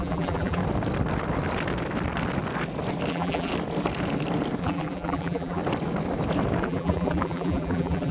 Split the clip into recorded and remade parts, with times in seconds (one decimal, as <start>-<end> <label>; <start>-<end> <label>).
0.0-0.6 remade; 0.6-3.1 recorded; 3.1-3.5 remade; 3.5-4.6 recorded; 4.6-5.6 remade; 5.6-6.6 recorded; 6.6-8.1 remade